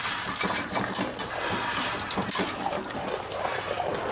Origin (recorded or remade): recorded